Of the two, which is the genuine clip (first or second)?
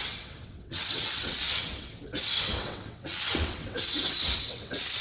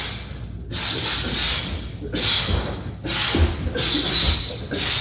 second